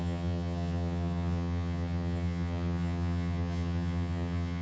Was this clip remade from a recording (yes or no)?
yes